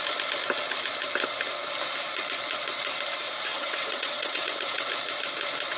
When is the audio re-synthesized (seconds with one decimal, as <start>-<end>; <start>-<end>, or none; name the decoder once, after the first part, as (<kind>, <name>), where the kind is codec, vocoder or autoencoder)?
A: 3.5-4.9 (vocoder, WaveNeXt)